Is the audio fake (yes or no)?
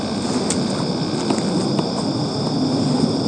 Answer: no